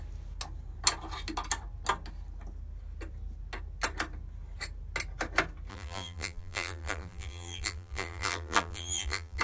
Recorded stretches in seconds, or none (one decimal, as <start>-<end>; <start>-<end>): 0.0-5.7